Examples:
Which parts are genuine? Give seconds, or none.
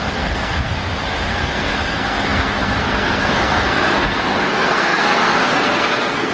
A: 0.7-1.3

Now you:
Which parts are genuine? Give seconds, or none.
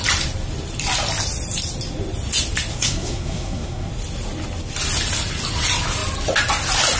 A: 0.0-2.7; 3.9-7.0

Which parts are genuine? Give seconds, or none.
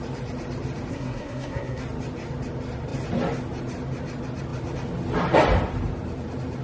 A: 0.0-0.9; 1.8-6.6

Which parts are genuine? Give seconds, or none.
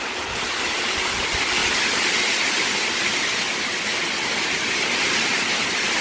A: 0.0-6.0